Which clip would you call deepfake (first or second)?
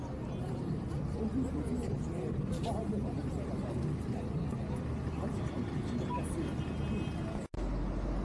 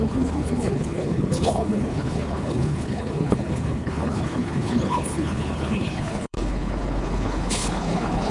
second